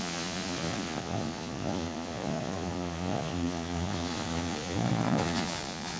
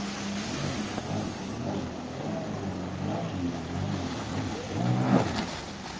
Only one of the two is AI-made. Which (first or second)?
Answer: first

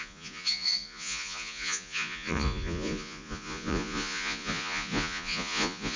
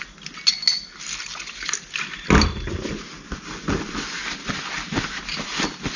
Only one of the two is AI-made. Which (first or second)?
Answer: first